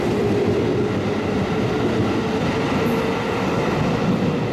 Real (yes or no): yes